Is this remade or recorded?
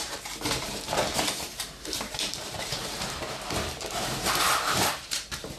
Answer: remade